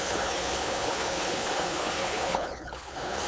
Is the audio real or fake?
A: fake